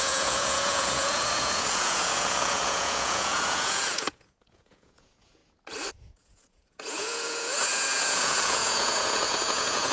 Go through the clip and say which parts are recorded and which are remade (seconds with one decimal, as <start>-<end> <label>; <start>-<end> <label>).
0.0-5.4 remade; 5.4-5.9 recorded; 5.9-9.9 remade